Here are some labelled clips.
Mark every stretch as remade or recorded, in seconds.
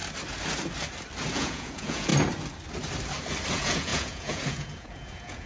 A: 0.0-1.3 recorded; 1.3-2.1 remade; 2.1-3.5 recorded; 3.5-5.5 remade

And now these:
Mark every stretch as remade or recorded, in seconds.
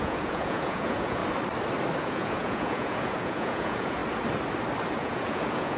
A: 0.0-1.2 remade; 1.2-2.0 recorded; 2.0-4.0 remade; 4.0-5.0 recorded; 5.0-5.8 remade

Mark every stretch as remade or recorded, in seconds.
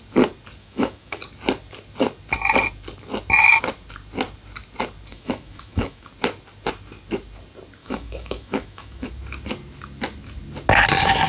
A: 0.0-0.6 recorded; 0.6-1.2 remade; 1.2-5.1 recorded; 5.1-6.1 remade; 6.1-7.8 recorded; 7.8-9.1 remade; 9.1-11.3 recorded